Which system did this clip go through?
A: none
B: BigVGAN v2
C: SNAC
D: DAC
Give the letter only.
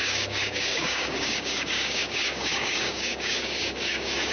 D